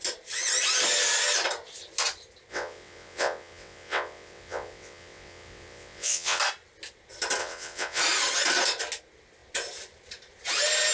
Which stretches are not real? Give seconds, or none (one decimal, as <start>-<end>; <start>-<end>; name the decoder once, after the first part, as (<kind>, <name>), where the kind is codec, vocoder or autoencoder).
2.5-6.4 (vocoder, WaveNeXt); 7.4-8.0